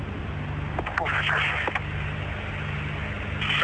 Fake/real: real